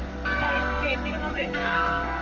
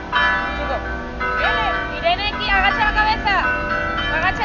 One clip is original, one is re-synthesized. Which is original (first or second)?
second